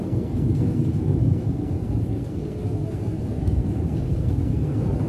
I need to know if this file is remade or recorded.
remade